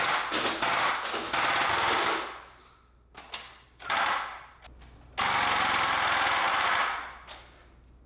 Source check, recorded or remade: recorded